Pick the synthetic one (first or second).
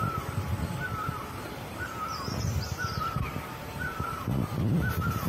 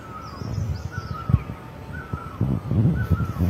first